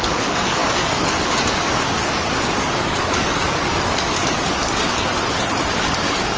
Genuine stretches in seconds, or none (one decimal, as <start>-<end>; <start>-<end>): 5.1-5.8